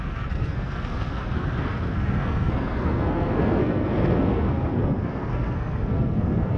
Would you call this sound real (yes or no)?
no